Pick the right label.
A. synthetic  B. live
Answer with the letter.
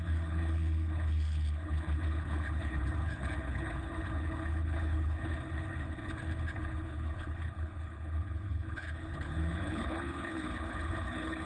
A